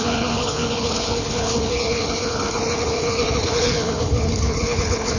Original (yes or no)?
no